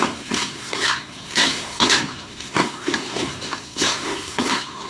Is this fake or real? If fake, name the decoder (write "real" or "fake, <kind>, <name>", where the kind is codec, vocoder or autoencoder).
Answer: fake, codec, SNAC